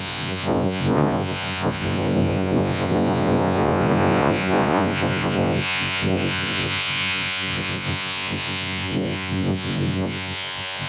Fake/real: fake